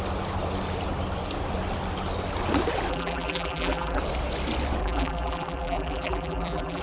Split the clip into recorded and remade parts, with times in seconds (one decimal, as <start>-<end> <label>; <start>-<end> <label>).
0.0-2.9 recorded; 2.9-4.0 remade; 4.0-4.8 recorded; 4.8-6.8 remade